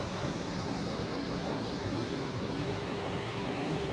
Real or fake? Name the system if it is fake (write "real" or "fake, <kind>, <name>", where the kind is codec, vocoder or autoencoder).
fake, codec, SNAC